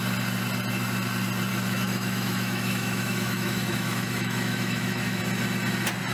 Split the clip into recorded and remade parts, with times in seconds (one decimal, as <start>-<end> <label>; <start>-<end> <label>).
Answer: 0.0-1.5 recorded; 1.5-5.2 remade; 5.2-6.1 recorded